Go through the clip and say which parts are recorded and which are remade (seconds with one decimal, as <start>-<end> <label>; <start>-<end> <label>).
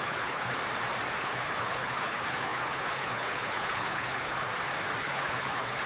0.0-0.5 remade; 0.5-1.2 recorded; 1.2-4.5 remade; 4.5-5.0 recorded; 5.0-5.9 remade